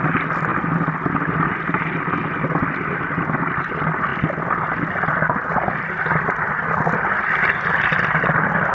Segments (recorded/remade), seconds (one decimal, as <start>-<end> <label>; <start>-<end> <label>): 0.0-8.7 recorded